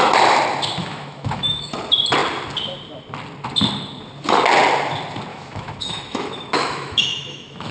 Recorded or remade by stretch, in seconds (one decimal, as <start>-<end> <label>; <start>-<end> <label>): 0.0-0.8 recorded; 0.8-1.7 remade; 1.7-5.3 recorded; 5.3-7.7 remade